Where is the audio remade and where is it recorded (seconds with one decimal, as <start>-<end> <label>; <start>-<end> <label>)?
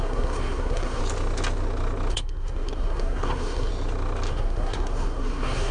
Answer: 0.0-1.0 remade; 1.0-2.1 recorded; 2.1-3.7 remade; 3.7-4.3 recorded; 4.3-5.7 remade